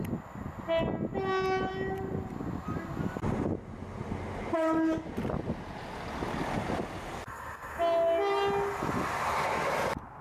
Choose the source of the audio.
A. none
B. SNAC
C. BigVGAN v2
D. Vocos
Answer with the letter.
A